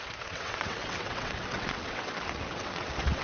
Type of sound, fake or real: fake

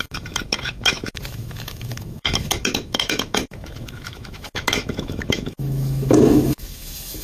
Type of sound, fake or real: fake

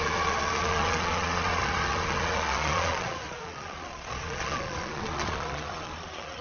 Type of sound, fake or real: fake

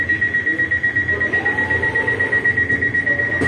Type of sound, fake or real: real